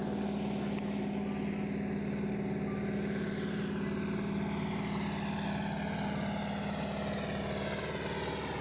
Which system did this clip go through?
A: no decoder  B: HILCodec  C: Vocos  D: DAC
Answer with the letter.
A